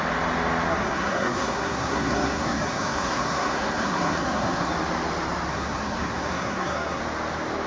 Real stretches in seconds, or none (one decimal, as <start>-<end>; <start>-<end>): 0.0-0.7; 4.7-5.5; 7.0-7.7